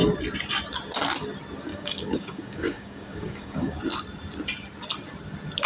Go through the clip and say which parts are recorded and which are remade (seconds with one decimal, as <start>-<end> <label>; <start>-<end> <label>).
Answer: 0.0-1.7 recorded; 1.7-3.8 remade; 3.8-5.7 recorded